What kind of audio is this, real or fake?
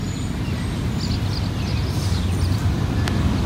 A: real